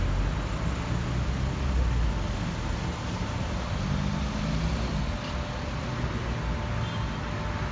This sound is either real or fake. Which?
real